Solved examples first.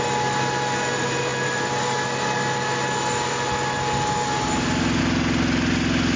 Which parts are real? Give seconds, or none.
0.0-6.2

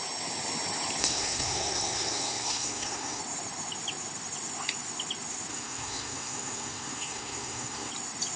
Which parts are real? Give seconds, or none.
0.0-1.0; 3.2-5.5; 7.9-8.4

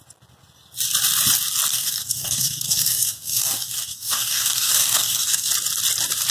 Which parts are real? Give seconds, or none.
0.0-1.7; 5.5-6.3

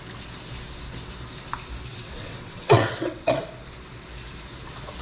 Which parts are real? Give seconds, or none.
0.0-1.9; 3.4-5.0

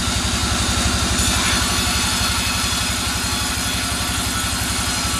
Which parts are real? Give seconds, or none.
0.0-5.2